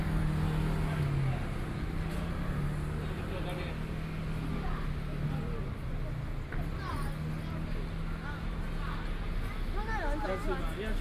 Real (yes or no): yes